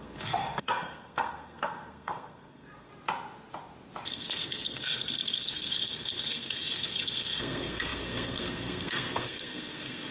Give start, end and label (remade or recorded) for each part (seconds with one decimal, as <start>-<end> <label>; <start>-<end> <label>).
0.0-2.9 remade; 2.9-4.1 recorded; 4.1-10.1 remade